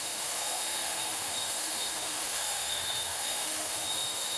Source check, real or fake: fake